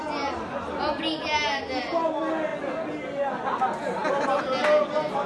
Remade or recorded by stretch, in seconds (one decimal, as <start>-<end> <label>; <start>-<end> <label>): 0.0-5.3 recorded